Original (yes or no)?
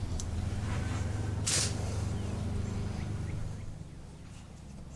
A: yes